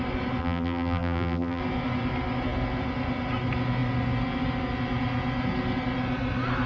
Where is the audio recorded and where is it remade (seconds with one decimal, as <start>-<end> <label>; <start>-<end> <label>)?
0.0-0.4 recorded; 0.4-1.6 remade; 1.6-6.7 recorded